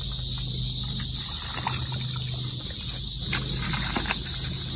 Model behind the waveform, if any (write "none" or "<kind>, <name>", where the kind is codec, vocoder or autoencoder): none